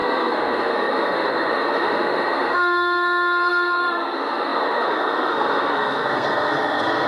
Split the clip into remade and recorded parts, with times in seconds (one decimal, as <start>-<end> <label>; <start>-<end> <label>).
0.0-7.1 remade